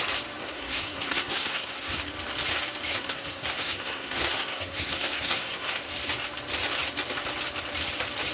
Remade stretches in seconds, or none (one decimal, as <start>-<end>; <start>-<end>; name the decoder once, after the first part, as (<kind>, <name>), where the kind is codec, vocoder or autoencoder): 0.4-2.1 (codec, SNAC); 2.9-5.9